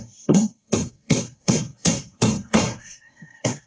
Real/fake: fake